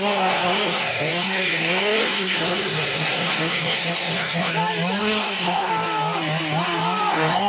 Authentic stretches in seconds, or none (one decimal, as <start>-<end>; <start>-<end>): 4.5-5.0; 5.7-7.1